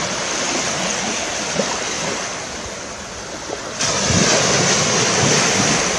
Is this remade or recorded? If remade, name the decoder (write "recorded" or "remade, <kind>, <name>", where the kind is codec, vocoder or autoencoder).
recorded